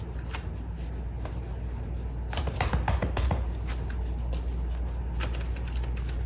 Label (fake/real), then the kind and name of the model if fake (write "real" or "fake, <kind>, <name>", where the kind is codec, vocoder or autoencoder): real